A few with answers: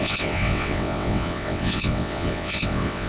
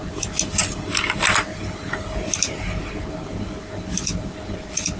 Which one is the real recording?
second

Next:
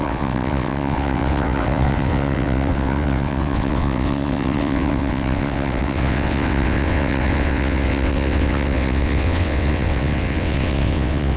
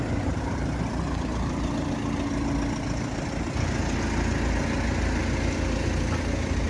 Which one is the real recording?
second